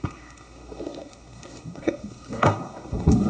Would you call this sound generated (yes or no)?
yes